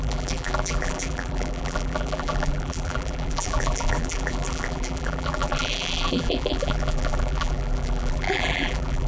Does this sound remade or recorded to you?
remade